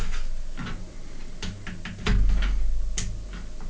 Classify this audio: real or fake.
real